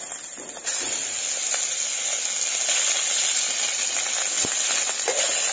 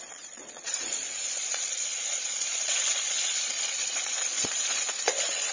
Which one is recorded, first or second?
first